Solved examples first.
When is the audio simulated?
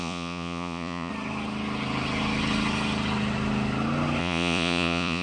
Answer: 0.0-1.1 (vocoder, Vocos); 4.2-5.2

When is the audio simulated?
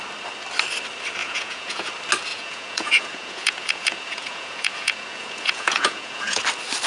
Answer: 1.2-1.9 (vocoder, Vocos); 2.3-6.4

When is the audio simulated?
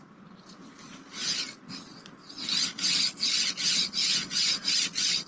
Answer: 4.0-4.7 (vocoder, Vocos)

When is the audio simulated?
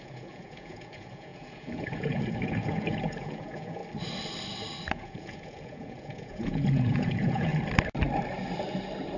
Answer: 0.0-3.8 (vocoder, Vocos); 4.9-7.5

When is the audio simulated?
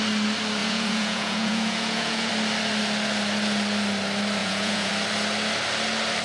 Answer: 0.6-2.3 (vocoder, Vocos); 4.4-4.9